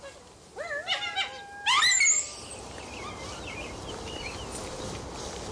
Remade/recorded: recorded